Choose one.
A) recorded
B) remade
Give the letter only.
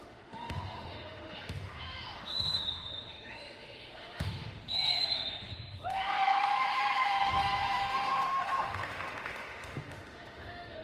B